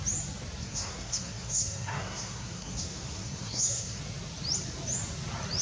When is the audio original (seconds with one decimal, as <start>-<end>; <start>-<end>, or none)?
0.0-0.6; 4.0-5.6

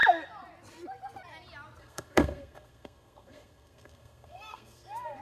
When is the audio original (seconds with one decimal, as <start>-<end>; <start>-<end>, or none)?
0.0-1.8

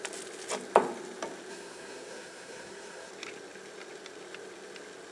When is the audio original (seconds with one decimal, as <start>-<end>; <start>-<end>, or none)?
0.0-1.5; 3.1-5.1

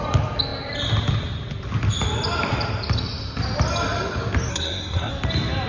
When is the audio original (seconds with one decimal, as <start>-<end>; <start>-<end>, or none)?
0.0-4.5; 5.1-5.7

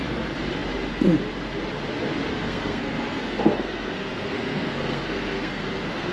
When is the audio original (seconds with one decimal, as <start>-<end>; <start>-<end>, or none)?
0.0-2.3